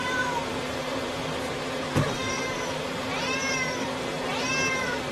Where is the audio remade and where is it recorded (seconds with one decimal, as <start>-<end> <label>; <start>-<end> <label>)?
0.0-3.1 remade; 3.1-5.1 recorded